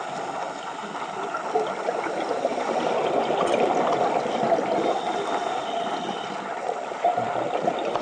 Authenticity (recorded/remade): recorded